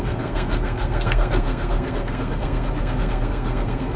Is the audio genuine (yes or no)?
no